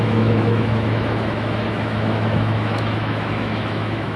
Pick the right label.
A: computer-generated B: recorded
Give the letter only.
A